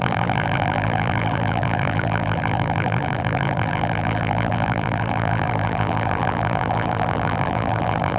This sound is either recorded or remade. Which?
remade